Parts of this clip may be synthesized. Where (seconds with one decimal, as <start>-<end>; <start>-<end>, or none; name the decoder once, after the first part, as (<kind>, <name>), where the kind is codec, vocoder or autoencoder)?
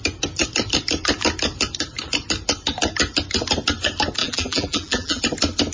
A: 4.2-5.2 (vocoder, BigVGAN v2)